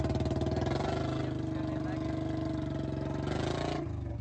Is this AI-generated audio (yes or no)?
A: no